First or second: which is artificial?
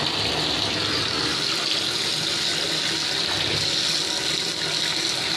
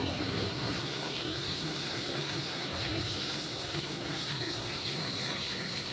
second